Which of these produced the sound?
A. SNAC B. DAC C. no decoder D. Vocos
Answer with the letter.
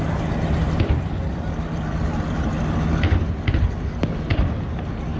C